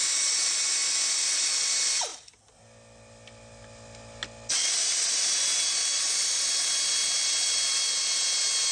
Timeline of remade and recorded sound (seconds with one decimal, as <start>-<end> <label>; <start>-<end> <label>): 0.0-8.7 recorded